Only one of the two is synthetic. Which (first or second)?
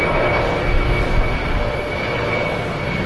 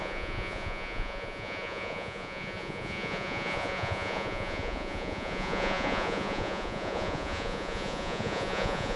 second